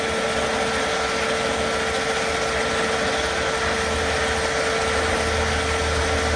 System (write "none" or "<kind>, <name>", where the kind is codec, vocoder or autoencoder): none